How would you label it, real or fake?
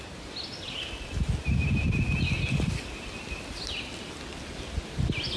real